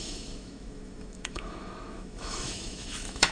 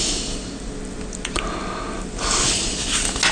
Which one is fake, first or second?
first